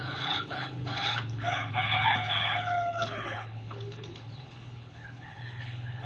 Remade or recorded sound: remade